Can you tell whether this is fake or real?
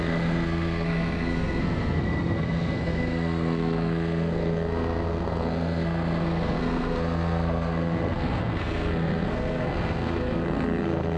fake